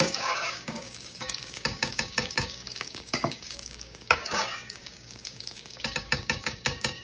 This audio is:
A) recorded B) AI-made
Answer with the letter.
B